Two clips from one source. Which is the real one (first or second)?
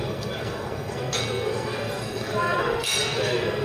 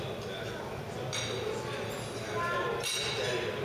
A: second